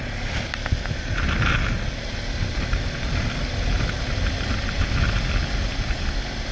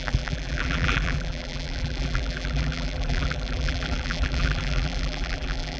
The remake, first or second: second